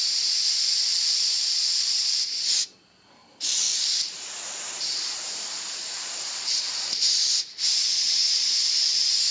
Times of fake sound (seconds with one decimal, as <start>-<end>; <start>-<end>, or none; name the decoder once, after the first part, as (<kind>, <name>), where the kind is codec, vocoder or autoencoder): 0.9-1.9 (vocoder, BigVGAN v2); 3.2-6.4